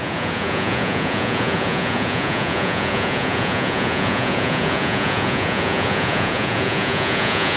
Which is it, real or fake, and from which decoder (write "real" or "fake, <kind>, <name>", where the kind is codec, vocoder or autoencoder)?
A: fake, vocoder, Vocos